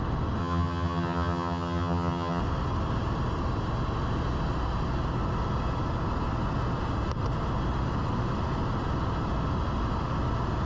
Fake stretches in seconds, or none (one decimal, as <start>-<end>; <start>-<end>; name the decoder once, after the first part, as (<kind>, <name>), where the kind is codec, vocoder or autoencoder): 0.4-2.4 (vocoder, HiFi-GAN)